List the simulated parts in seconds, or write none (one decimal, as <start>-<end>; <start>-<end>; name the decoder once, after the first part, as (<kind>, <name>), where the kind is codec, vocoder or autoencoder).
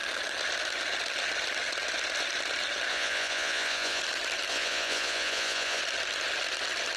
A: 2.9-4.0 (vocoder, Vocos); 4.5-5.8